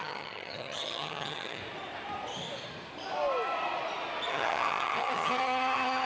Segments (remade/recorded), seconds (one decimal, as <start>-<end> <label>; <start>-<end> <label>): 0.0-1.6 remade; 1.6-4.3 recorded; 4.3-6.0 remade